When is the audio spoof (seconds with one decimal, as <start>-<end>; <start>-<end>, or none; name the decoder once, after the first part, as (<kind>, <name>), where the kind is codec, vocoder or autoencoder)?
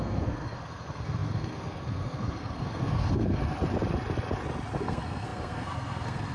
0.0-3.4 (codec, SNAC); 4.8-6.3